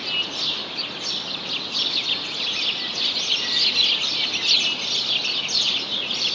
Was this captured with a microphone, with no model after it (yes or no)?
yes